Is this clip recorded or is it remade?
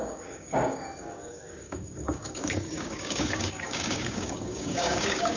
remade